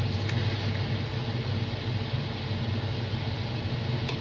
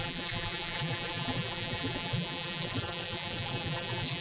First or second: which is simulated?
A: second